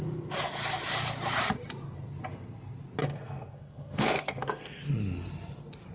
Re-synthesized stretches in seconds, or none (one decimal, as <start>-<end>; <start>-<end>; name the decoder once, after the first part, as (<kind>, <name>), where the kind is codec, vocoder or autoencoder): 3.0-4.8 (codec, SNAC)

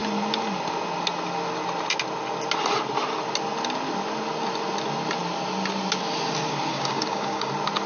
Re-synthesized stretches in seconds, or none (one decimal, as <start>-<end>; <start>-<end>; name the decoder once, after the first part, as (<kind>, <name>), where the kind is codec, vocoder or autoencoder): 6.7-7.5 (codec, DAC)

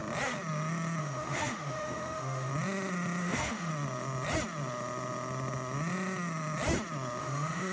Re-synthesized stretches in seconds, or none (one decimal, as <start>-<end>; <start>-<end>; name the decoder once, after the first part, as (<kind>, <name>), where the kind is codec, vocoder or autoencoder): 1.0-2.5 (autoencoder, DAC-VAE); 3.2-3.7; 7.2-7.7

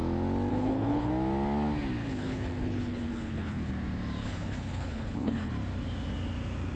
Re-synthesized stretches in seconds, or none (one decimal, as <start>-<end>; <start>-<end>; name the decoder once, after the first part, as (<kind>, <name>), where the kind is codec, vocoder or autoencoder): 0.5-1.1 (codec, HILCodec); 2.0-3.7; 4.2-5.5

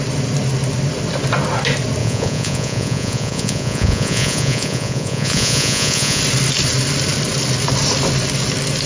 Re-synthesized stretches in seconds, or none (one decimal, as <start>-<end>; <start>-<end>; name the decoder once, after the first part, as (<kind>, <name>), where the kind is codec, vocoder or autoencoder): 2.0-6.2 (vocoder, Vocos)

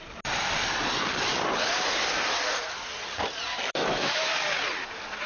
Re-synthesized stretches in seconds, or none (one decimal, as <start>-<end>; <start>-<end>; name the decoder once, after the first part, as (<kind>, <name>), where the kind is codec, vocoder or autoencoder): 3.5-4.3 (autoencoder, DAC-VAE)